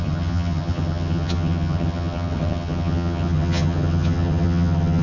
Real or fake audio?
fake